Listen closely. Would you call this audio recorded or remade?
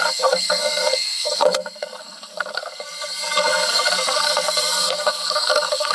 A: remade